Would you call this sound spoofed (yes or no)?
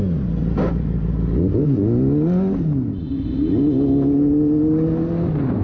no